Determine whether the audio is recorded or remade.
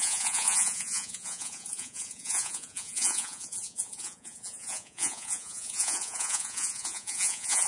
remade